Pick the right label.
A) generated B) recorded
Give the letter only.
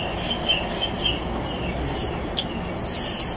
B